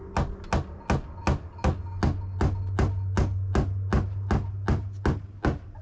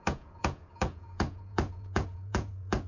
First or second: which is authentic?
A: first